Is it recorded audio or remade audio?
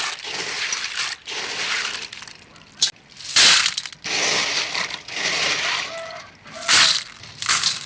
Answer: recorded